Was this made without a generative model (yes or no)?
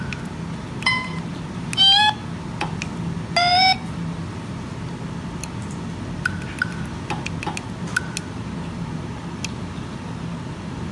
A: yes